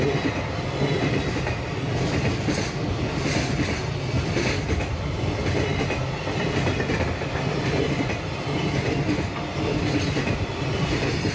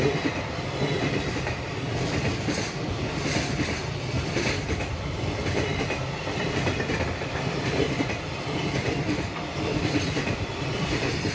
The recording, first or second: first